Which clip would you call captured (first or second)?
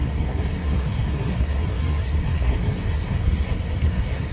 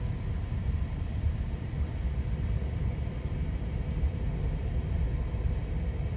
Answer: second